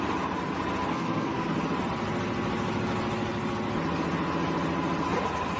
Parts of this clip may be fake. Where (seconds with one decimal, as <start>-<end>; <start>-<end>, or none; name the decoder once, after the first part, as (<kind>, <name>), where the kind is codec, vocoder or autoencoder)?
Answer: 0.9-1.5 (codec, SNAC)